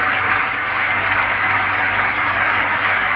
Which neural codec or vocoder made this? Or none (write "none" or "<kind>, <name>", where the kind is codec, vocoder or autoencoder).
codec, DAC